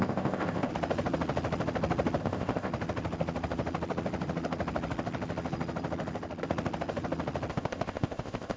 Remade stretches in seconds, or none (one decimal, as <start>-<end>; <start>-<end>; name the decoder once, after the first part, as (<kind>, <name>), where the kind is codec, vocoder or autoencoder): 0.0-0.7 (codec, ZipCodec); 2.2-2.7; 7.5-8.6